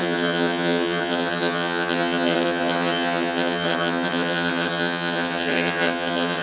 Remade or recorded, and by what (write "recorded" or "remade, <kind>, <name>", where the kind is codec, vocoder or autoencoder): remade, vocoder, HiFi-GAN